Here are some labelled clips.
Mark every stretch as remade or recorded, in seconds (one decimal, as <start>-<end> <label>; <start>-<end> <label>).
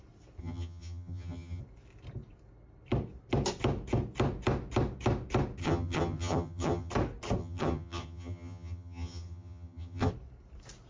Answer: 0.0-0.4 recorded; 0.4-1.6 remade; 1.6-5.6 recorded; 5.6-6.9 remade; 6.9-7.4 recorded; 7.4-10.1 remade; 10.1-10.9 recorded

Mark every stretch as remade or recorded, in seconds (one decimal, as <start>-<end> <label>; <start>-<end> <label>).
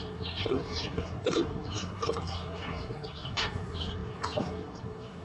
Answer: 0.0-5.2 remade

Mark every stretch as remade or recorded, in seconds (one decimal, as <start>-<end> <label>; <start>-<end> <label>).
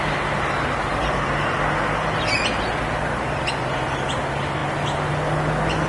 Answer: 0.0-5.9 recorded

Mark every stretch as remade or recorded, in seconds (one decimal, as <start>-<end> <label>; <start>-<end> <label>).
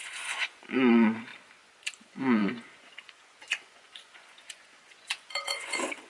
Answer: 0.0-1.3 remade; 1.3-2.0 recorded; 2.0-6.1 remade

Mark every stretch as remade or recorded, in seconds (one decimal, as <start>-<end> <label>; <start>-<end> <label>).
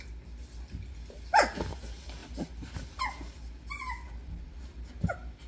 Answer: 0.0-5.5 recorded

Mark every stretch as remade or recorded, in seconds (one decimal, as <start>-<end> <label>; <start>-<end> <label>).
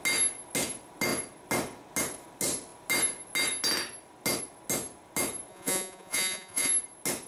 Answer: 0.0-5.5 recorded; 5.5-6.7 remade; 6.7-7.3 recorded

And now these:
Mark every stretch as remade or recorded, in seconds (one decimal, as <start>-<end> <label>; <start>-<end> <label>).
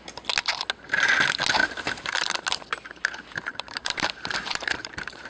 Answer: 0.0-1.6 recorded; 1.6-2.4 remade; 2.4-3.5 recorded; 3.5-5.3 remade